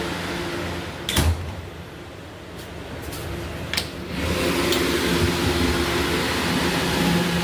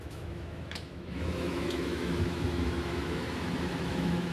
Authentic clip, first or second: first